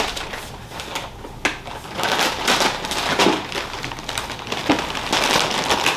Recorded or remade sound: recorded